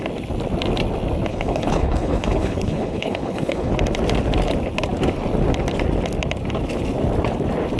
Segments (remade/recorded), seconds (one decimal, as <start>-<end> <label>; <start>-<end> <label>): 0.0-1.3 recorded; 1.3-3.7 remade; 3.7-7.8 recorded